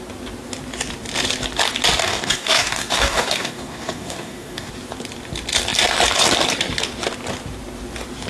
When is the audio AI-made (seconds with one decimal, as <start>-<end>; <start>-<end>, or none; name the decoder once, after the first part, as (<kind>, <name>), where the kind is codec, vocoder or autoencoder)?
2.0-4.7 (codec, DAC)